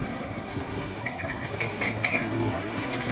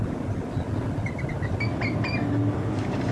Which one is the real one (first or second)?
second